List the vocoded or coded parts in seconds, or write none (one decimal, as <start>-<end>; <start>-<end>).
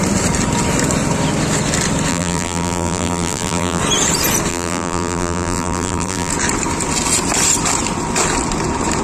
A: 2.1-3.8; 4.5-6.3